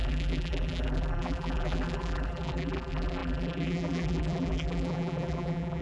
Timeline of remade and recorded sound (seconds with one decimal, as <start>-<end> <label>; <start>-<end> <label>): 0.0-5.8 remade